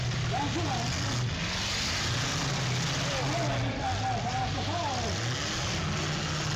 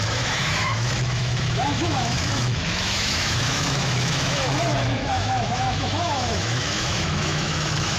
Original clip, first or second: first